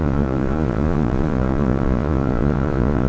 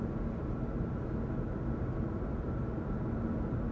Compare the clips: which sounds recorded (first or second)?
second